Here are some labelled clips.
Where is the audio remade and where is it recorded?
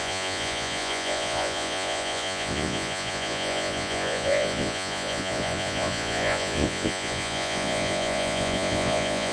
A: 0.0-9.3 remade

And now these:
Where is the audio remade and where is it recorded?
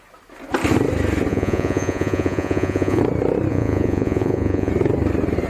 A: 0.0-1.3 recorded; 1.3-3.0 remade; 3.0-3.5 recorded; 3.5-4.7 remade; 4.7-5.5 recorded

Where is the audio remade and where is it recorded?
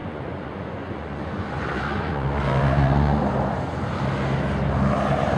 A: 0.0-3.2 remade; 3.2-5.4 recorded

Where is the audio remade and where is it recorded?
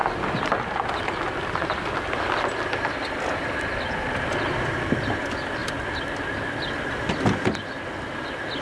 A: 0.0-8.6 recorded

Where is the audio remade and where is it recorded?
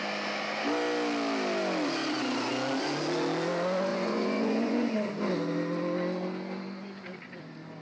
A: 0.0-3.9 recorded; 3.9-5.2 remade; 5.2-7.8 recorded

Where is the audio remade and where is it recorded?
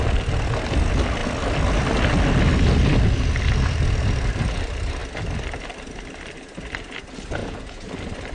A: 0.0-7.4 recorded; 7.4-7.9 remade; 7.9-8.3 recorded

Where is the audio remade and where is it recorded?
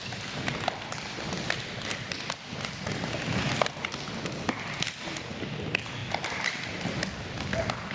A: 0.0-7.9 recorded